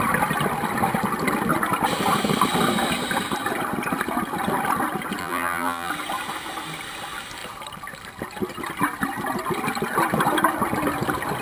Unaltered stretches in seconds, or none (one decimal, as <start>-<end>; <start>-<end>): 0.0-5.2; 5.9-11.4